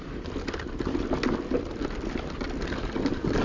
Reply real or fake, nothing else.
real